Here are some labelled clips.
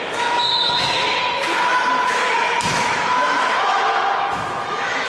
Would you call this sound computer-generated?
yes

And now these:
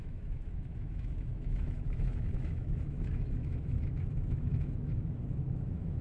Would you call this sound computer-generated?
yes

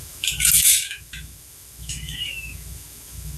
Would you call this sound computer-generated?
yes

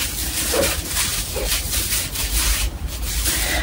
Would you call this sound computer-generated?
no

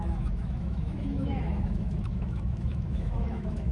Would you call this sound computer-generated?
yes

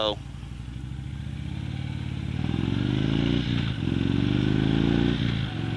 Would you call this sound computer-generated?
no